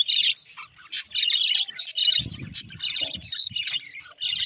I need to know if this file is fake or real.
real